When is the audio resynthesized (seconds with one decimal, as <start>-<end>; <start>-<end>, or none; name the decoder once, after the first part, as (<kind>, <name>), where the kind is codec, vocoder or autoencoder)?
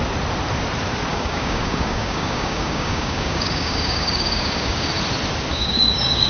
1.1-4.9 (codec, DAC); 5.5-6.3